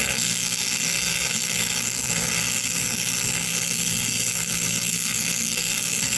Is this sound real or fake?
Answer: fake